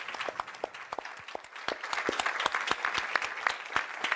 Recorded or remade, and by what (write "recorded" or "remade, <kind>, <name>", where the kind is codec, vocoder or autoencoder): recorded